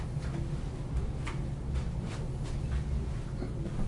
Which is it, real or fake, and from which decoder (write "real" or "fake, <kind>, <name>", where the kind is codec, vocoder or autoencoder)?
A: real